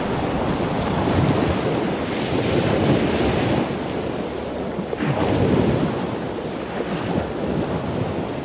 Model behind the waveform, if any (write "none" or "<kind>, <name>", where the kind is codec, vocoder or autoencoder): none